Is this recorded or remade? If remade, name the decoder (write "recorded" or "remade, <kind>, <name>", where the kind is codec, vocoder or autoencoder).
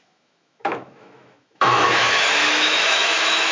remade, autoencoder, DAC-VAE